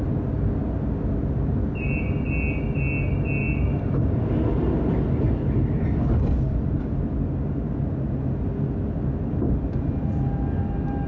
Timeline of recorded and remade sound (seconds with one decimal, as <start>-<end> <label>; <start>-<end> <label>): 0.0-11.1 recorded